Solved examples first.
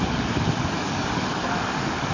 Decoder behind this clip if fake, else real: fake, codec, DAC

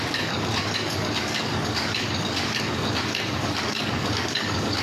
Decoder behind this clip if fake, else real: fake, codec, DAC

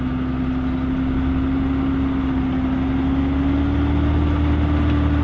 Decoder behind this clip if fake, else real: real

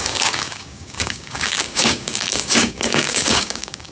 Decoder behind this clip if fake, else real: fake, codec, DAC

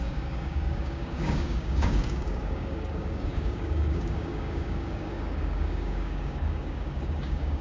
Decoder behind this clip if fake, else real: fake, codec, DAC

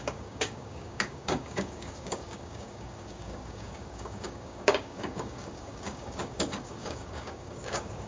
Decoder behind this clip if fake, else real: fake, codec, DAC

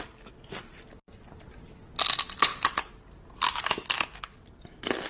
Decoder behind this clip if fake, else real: real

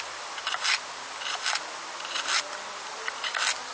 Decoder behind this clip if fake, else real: real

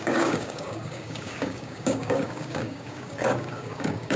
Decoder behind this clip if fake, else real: fake, codec, DAC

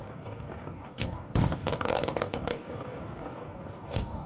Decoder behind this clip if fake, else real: fake, codec, DAC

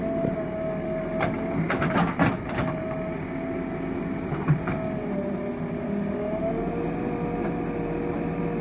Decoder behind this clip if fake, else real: real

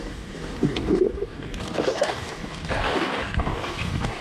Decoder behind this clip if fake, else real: fake, codec, DAC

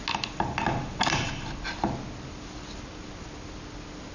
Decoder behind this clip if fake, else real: real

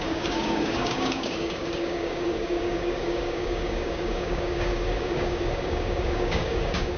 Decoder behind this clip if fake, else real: fake, codec, DAC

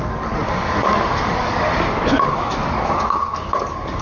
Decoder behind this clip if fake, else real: fake, codec, DAC